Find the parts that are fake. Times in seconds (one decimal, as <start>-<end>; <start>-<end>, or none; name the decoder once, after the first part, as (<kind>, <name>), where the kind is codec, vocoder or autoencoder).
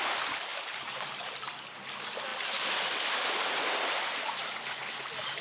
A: 0.5-1.4 (vocoder, BigVGAN v2); 2.3-4.8